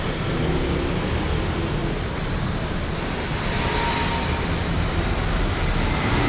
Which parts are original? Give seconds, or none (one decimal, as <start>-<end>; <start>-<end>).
0.0-6.3